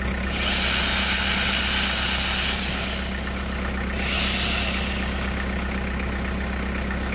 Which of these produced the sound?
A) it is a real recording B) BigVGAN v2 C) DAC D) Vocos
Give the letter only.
A